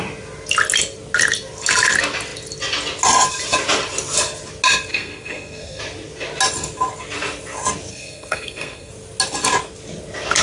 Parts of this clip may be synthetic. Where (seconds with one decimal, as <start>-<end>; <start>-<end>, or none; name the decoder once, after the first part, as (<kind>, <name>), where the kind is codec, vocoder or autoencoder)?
4.9-5.8 (codec, SNAC); 7.9-8.9

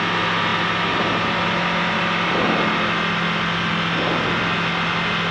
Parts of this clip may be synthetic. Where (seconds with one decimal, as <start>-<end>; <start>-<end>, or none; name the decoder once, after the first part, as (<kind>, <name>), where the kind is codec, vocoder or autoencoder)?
none

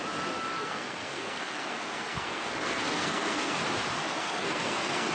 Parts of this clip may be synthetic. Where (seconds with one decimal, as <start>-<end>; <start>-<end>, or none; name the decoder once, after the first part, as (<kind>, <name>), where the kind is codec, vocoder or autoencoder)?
0.5-3.6 (codec, SNAC); 4.0-5.1

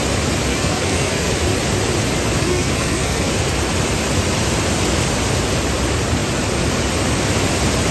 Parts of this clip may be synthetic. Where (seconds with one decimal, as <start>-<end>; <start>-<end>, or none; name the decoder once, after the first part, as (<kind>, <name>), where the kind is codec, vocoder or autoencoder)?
0.5-1.3 (codec, SNAC); 2.4-3.3